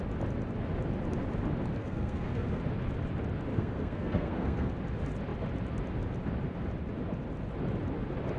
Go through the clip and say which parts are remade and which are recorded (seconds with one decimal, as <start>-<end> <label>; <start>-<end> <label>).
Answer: 0.0-1.8 recorded; 1.8-2.6 remade; 2.6-3.5 recorded; 3.5-4.7 remade; 4.7-8.4 recorded